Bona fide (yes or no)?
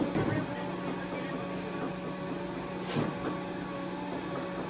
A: yes